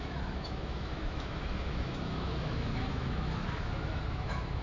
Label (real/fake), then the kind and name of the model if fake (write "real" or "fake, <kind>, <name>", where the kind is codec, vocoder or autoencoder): fake, autoencoder, DAC-VAE